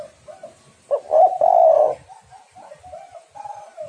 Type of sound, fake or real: real